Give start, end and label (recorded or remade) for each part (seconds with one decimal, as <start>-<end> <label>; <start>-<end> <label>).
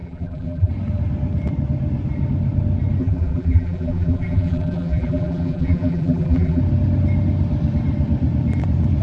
0.0-0.7 remade; 0.7-3.0 recorded; 3.0-6.6 remade; 6.6-9.0 recorded